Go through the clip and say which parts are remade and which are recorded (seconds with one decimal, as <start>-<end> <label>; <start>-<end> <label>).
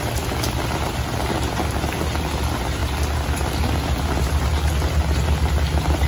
0.0-6.1 recorded